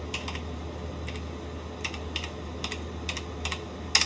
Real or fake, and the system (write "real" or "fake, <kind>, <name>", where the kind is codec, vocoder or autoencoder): real